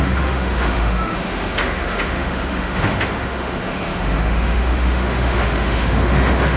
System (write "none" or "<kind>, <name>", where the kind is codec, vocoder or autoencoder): autoencoder, DAC-VAE